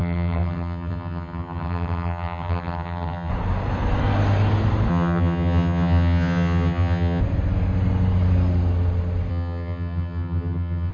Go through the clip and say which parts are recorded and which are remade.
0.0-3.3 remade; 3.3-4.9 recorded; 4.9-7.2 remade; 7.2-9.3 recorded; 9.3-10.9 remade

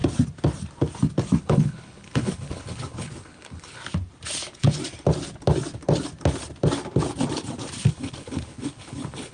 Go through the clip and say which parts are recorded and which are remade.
0.0-1.4 recorded; 1.4-3.8 remade; 3.8-7.9 recorded; 7.9-9.3 remade

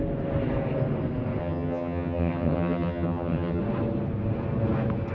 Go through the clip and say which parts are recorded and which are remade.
0.0-1.4 recorded; 1.4-3.6 remade; 3.6-5.1 recorded

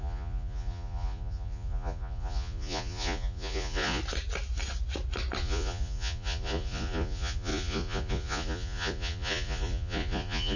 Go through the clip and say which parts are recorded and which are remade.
0.0-4.0 remade; 4.0-5.4 recorded; 5.4-10.6 remade

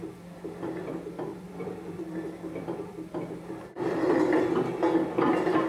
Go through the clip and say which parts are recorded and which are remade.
0.0-1.3 recorded; 1.3-4.4 remade; 4.4-5.7 recorded

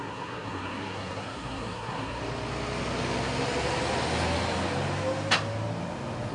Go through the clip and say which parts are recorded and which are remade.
0.0-2.2 remade; 2.2-6.3 recorded